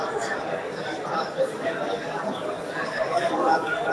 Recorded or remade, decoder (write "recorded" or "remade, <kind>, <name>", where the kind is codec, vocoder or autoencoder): remade, codec, DAC